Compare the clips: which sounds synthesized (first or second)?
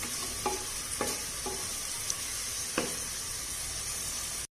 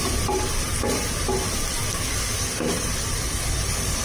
second